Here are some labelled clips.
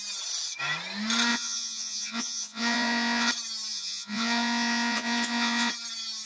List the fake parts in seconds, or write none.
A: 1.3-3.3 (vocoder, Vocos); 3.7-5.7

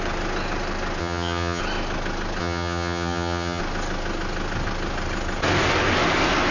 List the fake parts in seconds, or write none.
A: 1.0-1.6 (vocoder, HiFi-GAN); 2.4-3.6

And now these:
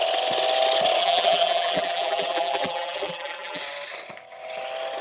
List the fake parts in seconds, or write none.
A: 1.0-3.6 (vocoder, BigVGAN v2)